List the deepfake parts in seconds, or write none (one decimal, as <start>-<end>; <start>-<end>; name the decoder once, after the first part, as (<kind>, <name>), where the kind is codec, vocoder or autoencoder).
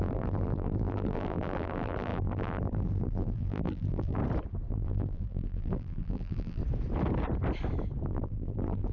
0.0-4.2 (vocoder, BigVGAN v2); 4.7-6.6; 8.1-8.9